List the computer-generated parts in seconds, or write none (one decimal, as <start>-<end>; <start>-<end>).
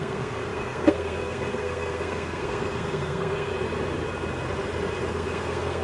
0.0-3.5; 5.1-5.8